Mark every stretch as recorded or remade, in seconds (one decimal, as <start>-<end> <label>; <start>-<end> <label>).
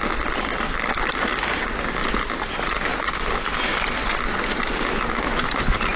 0.0-6.0 recorded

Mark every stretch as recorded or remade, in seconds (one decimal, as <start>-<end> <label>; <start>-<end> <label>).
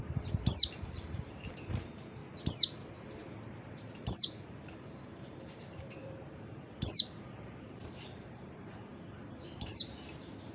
0.0-2.2 remade; 2.2-3.4 recorded; 3.4-10.5 remade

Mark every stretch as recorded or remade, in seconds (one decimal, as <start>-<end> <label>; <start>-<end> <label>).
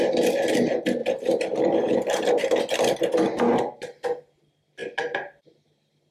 0.0-1.0 recorded; 1.0-2.6 remade; 2.6-6.1 recorded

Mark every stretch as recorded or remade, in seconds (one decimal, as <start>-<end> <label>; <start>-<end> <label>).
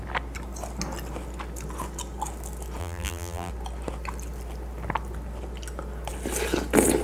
0.0-2.8 recorded; 2.8-3.5 remade; 3.5-7.0 recorded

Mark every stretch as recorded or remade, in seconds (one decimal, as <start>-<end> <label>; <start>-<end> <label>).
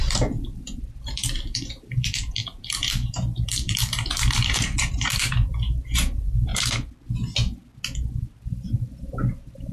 0.0-6.5 remade; 6.5-8.2 recorded; 8.2-9.7 remade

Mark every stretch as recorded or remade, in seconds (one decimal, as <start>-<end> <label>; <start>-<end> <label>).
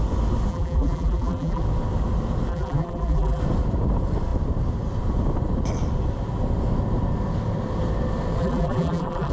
0.0-0.5 recorded; 0.5-1.6 remade; 1.6-2.5 recorded; 2.5-3.4 remade; 3.4-8.4 recorded; 8.4-9.3 remade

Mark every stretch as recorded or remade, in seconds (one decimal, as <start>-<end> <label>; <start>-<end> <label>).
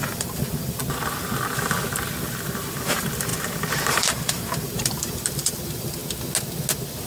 0.0-0.8 remade; 0.8-2.2 recorded; 2.2-6.0 remade; 6.0-7.1 recorded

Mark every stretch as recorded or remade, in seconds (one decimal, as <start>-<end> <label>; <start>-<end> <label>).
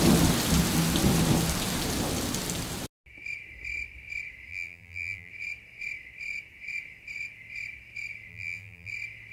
0.0-4.5 recorded; 4.5-5.3 remade; 5.3-8.3 recorded; 8.3-8.9 remade; 8.9-9.3 recorded